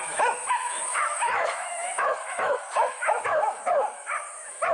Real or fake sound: fake